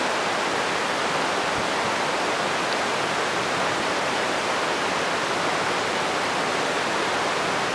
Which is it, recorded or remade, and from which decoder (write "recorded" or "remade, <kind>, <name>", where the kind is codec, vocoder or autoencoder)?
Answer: recorded